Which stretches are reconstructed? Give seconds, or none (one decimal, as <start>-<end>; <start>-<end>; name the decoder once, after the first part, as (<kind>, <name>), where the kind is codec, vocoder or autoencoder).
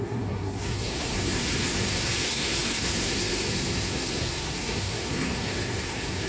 0.0-6.3 (codec, SNAC)